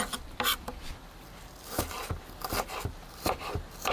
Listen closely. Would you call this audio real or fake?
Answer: real